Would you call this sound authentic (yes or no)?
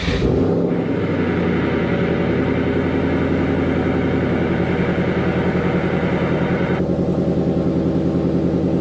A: yes